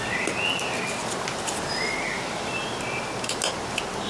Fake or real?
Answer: real